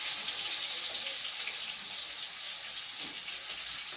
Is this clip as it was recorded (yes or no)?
yes